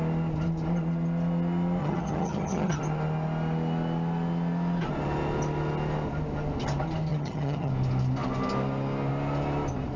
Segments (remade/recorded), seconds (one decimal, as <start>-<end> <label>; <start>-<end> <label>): 0.0-1.8 recorded; 1.8-2.8 remade; 2.8-7.1 recorded; 7.1-7.7 remade; 7.7-10.0 recorded